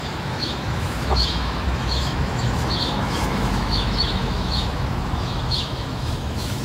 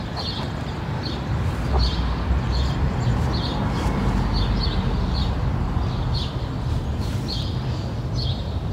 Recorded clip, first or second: second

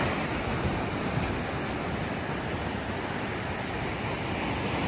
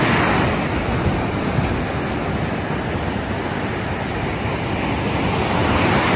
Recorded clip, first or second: second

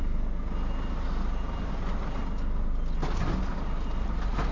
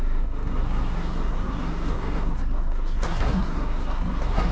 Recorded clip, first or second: first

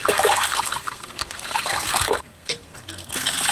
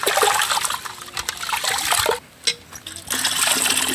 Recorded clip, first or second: second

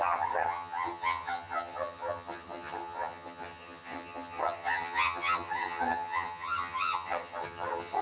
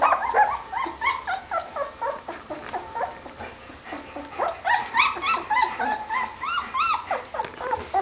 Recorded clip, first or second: second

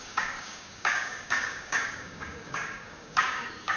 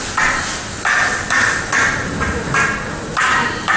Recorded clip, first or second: second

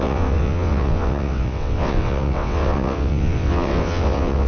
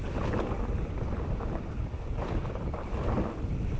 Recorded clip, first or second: second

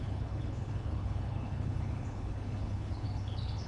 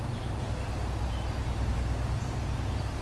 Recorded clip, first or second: second